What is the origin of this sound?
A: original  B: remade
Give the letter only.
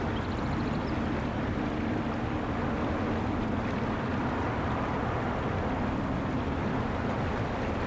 A